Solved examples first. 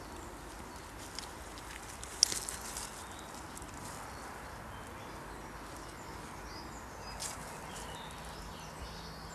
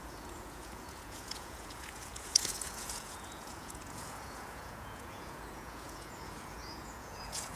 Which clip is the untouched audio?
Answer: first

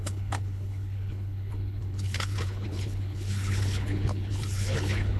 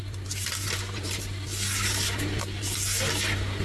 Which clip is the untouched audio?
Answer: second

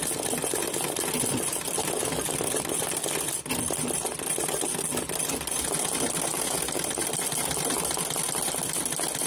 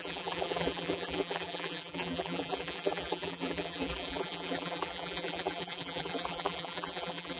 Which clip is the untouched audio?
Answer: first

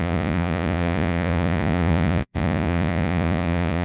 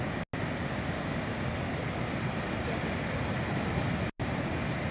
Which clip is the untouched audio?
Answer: second